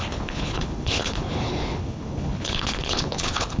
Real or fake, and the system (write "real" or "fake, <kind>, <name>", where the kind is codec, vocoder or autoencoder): fake, codec, HILCodec